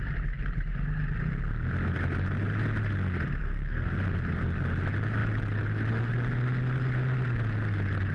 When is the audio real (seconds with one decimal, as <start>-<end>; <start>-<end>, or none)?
0.0-3.4; 3.9-8.1